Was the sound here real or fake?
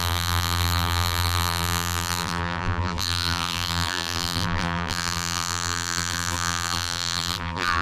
fake